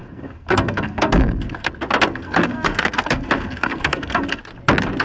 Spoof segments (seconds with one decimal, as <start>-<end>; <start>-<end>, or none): 0.0-1.7; 2.1-4.4

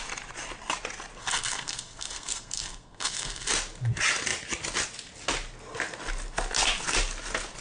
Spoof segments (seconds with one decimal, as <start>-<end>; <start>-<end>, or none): 1.2-3.5

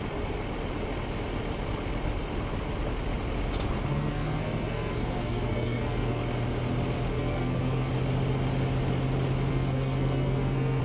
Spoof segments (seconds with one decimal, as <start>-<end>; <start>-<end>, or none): 3.9-6.2; 7.1-7.9; 9.5-10.8

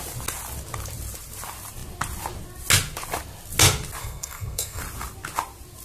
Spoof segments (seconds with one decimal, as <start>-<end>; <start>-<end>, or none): 4.0-4.8

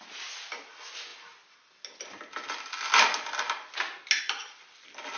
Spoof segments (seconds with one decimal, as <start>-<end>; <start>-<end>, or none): none

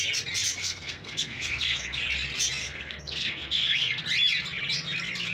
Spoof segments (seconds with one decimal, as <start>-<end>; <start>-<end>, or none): 0.6-2.0; 2.6-4.0